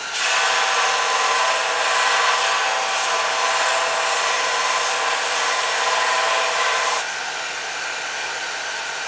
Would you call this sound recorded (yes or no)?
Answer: yes